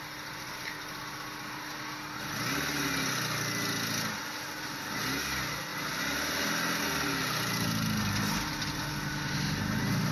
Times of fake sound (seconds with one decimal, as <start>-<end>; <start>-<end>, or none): none

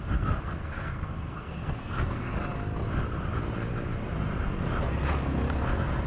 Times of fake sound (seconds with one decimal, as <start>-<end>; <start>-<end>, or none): 0.0-2.3

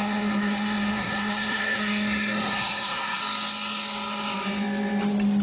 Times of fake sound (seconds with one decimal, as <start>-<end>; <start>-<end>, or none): 0.0-3.2

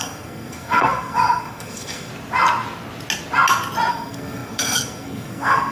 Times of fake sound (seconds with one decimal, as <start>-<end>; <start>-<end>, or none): 0.0-2.1; 3.9-5.7

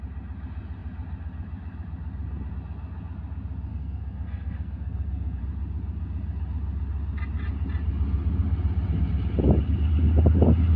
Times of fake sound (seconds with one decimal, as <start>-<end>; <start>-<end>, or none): 3.7-5.4